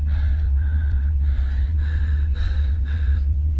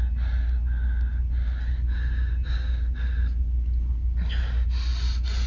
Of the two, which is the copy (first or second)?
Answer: first